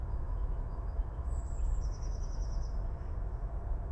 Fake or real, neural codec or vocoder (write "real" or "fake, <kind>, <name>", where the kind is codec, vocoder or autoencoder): fake, autoencoder, DAC-VAE